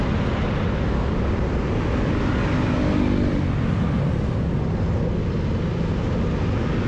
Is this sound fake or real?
real